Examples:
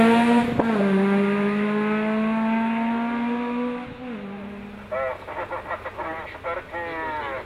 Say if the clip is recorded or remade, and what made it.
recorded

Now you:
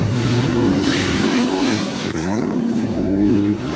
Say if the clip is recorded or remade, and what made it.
remade, codec, SNAC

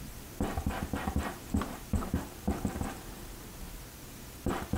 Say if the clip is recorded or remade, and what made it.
remade, vocoder, BigVGAN v2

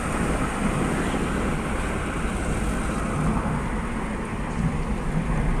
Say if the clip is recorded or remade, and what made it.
recorded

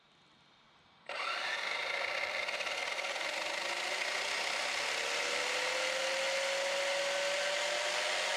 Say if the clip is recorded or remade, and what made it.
recorded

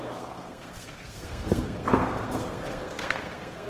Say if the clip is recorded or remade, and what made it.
remade, codec, SNAC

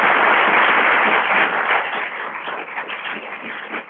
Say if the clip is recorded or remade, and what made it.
recorded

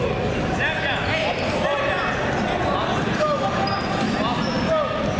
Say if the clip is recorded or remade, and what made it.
recorded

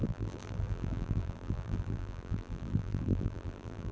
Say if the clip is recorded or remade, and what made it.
remade, vocoder, BigVGAN v2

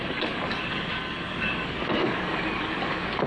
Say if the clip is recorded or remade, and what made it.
remade, codec, DAC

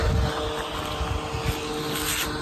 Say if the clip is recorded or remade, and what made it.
recorded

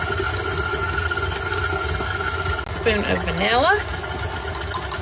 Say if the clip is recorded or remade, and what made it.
recorded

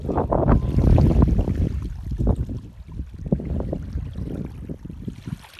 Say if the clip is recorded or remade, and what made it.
recorded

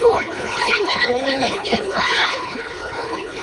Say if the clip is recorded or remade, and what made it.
remade, codec, HILCodec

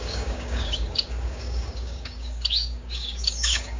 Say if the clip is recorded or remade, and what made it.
remade, codec, DAC